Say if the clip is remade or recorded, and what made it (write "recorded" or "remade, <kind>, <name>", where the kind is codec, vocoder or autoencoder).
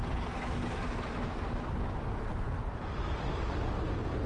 recorded